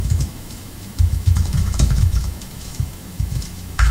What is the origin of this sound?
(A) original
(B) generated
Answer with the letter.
B